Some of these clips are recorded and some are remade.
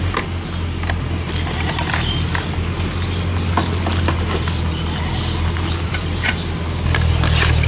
recorded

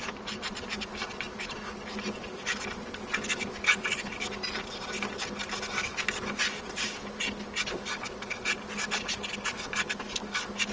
recorded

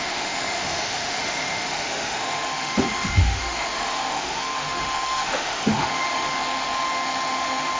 remade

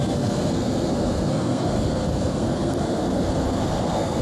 remade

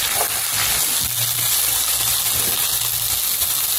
recorded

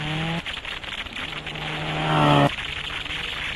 recorded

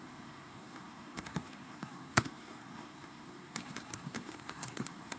remade